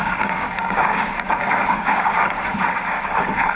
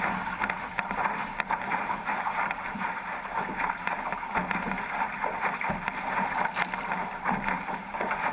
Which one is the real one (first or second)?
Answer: second